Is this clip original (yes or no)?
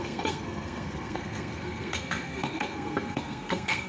no